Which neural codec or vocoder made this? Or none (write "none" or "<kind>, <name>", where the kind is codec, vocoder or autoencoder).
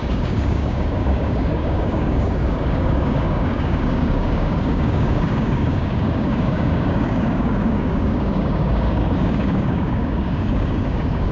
codec, DAC